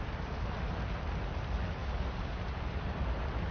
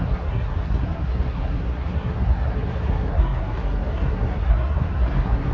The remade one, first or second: second